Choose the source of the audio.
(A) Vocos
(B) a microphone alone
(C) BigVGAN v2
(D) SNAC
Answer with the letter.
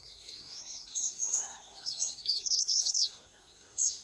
D